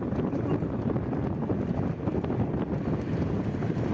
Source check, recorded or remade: recorded